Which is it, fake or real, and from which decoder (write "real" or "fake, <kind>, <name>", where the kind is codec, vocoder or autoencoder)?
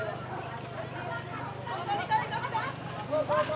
real